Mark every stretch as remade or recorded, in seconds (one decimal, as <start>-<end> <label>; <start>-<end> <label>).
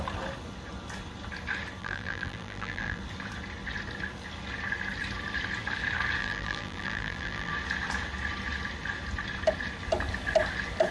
0.0-1.8 recorded; 1.8-3.0 remade; 3.0-6.2 recorded; 6.2-7.5 remade; 7.5-10.9 recorded